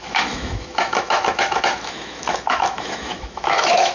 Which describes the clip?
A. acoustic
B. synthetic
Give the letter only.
B